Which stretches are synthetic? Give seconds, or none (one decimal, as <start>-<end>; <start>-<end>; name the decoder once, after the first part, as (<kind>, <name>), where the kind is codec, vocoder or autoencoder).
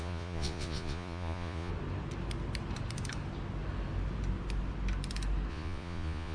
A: 0.0-1.7 (vocoder, Vocos); 5.5-6.3